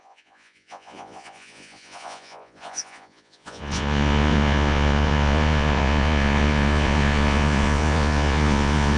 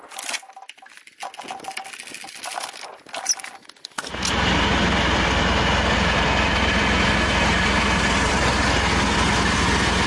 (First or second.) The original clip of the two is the second